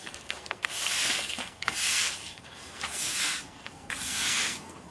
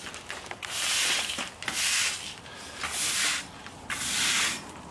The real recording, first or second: second